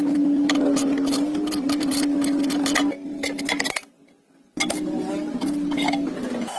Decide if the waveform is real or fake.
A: real